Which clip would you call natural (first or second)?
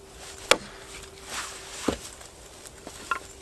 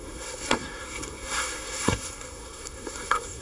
first